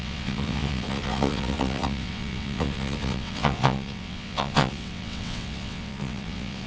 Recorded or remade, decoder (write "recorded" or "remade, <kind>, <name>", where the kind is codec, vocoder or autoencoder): remade, vocoder, WaveNeXt